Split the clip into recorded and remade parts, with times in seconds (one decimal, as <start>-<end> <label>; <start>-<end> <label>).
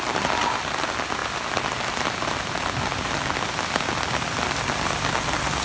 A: 0.0-5.6 recorded